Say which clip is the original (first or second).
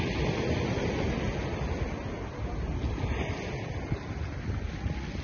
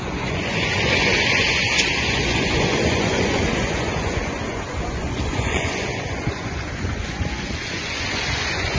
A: first